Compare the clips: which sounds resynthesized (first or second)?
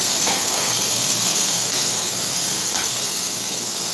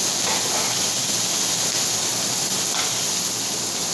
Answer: first